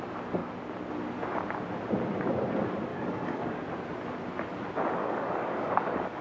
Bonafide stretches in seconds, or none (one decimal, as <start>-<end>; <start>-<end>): 0.0-2.9; 3.6-5.0